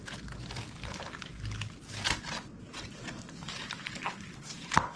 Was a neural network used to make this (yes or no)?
no